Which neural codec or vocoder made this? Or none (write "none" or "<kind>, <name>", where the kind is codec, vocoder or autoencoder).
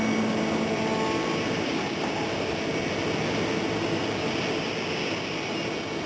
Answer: none